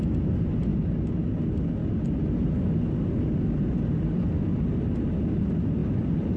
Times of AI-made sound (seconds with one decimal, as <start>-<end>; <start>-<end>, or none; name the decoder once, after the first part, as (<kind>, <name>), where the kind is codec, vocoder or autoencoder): none